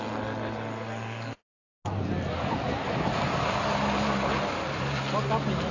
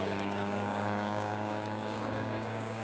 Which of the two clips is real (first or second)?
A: first